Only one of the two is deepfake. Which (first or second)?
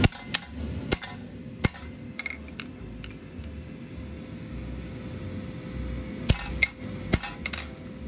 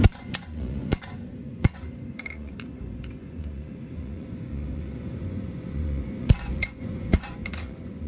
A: second